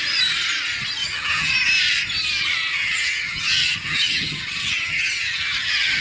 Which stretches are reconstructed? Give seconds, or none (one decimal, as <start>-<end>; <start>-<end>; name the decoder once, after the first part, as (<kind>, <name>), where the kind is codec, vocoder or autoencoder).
1.0-1.5 (vocoder, HiFi-GAN); 2.7-6.0